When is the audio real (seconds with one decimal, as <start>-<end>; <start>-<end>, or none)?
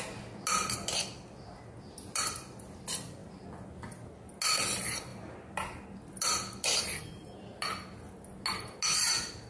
0.0-9.5